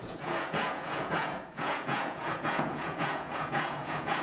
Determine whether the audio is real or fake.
fake